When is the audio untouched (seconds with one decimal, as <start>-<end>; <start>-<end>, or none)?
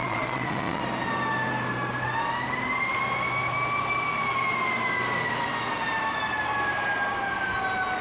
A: 0.8-8.0